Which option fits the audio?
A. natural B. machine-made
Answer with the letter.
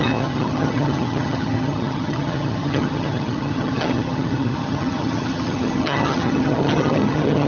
B